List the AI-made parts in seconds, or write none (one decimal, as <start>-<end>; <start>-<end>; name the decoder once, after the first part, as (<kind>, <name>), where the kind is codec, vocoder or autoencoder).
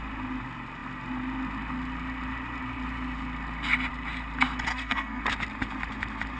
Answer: 4.7-5.2 (codec, SNAC)